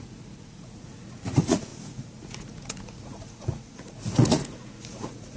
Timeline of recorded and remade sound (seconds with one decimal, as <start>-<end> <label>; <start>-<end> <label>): 0.0-5.4 remade